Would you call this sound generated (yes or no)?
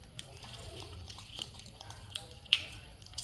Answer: yes